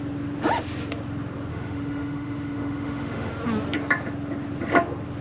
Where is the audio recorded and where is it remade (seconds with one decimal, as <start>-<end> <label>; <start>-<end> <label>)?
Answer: 0.0-1.5 recorded; 1.5-3.3 remade; 3.3-5.2 recorded